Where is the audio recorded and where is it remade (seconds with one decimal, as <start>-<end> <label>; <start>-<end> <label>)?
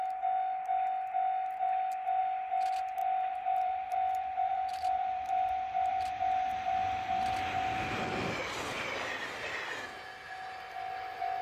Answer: 0.0-3.0 recorded; 3.0-6.7 remade; 6.7-11.4 recorded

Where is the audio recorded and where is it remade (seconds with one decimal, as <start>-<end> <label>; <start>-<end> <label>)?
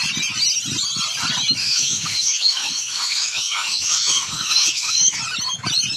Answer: 0.0-1.6 recorded; 1.6-5.2 remade; 5.2-6.0 recorded